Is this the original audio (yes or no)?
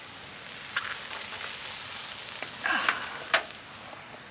yes